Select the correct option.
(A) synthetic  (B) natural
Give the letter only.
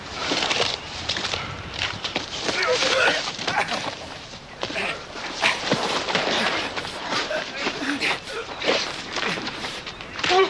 A